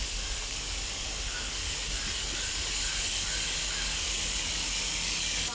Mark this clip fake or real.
fake